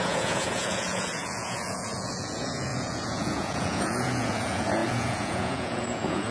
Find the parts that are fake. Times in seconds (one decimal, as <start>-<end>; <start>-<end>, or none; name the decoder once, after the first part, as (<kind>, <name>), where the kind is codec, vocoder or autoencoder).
0.0-6.3 (vocoder, Vocos)